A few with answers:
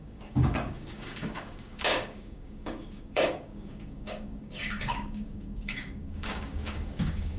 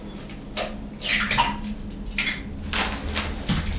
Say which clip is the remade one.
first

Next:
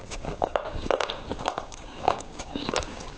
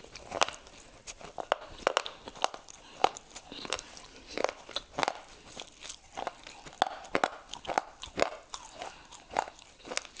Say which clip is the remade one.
first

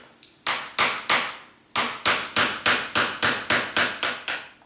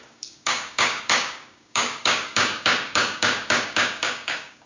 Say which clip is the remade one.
second